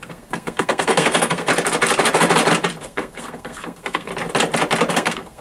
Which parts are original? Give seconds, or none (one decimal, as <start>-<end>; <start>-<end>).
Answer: 1.5-2.8; 4.1-4.9